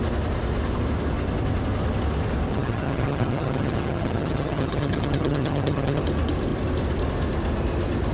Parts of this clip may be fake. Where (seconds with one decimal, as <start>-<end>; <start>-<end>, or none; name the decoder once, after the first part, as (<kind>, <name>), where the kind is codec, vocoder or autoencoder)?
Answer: 2.5-6.0 (vocoder, HiFi-GAN)

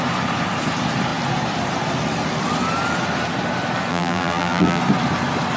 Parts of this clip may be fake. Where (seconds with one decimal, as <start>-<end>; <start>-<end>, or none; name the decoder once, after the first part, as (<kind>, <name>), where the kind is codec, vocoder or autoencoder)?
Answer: 3.9-4.8 (vocoder, BigVGAN v2)

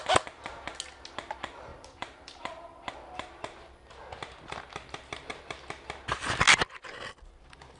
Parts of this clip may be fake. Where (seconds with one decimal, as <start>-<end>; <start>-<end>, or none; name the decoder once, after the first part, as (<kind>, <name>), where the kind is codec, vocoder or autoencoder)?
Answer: 1.7-2.9 (vocoder, BigVGAN v2)

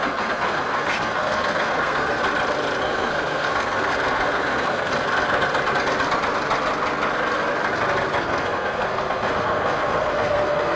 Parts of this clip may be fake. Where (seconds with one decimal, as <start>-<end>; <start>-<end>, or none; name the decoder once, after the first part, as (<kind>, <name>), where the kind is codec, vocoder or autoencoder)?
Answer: 0.0-2.2 (codec, SNAC); 2.8-4.9; 8.2-10.8

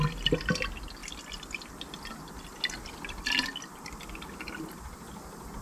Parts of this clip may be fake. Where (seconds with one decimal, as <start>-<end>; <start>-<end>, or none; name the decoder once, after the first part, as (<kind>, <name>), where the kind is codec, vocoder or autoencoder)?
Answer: none